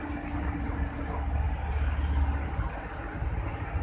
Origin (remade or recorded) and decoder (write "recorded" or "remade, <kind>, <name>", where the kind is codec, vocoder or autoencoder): recorded